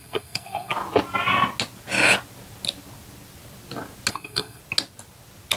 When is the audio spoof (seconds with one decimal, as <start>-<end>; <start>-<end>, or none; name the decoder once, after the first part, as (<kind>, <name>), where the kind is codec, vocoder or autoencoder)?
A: 0.0-0.7 (codec, SNAC); 4.1-4.6